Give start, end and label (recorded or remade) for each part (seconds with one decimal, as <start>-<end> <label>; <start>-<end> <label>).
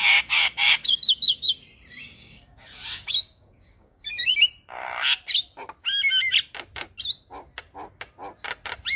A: 0.0-1.5 remade; 1.5-2.0 recorded; 2.0-4.3 remade; 4.3-9.0 recorded